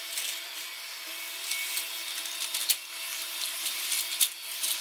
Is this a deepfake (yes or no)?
no